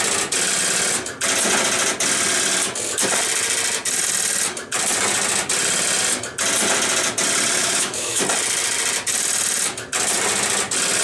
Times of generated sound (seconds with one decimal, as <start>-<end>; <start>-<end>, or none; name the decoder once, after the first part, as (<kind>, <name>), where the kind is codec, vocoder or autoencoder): 7.6-8.2 (autoencoder, DAC-VAE)